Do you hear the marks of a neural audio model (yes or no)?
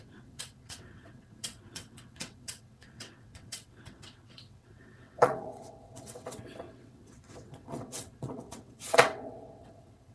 yes